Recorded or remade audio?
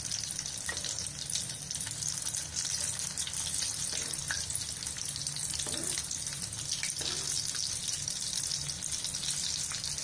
recorded